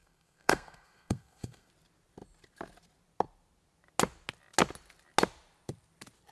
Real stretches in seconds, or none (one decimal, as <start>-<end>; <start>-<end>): 1.7-6.3